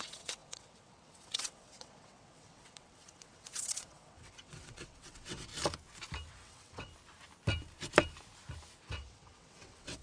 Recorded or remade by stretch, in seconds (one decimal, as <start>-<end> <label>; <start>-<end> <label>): 0.0-5.5 remade; 5.5-6.3 recorded; 6.3-6.9 remade; 6.9-8.8 recorded; 8.8-10.0 remade